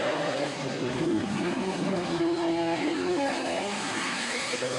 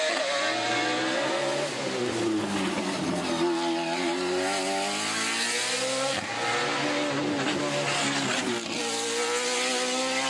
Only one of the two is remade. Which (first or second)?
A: first